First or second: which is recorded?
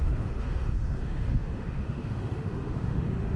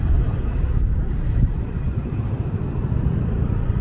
second